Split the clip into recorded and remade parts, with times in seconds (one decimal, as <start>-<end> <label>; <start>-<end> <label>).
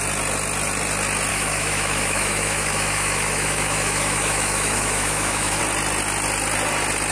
0.0-1.3 recorded; 1.3-5.6 remade; 5.6-7.1 recorded